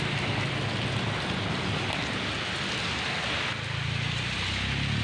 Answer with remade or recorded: recorded